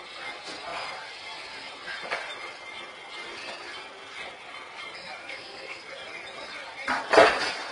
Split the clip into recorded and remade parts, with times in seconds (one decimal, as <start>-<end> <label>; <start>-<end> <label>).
0.0-5.2 recorded; 5.2-5.8 remade; 5.8-7.7 recorded